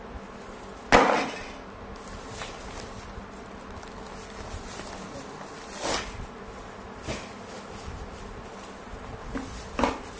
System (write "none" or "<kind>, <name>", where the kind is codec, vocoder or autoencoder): none